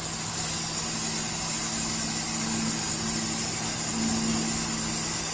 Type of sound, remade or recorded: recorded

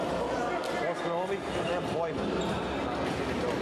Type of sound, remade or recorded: recorded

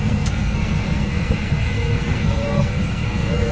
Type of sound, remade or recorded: remade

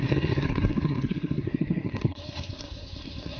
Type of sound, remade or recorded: remade